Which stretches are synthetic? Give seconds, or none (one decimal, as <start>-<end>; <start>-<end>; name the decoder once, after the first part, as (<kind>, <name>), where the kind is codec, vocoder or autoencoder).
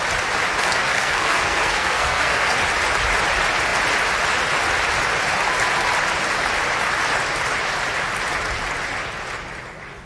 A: 0.6-2.6 (codec, SNAC)